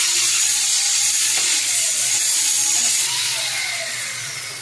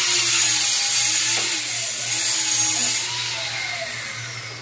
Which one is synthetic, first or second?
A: first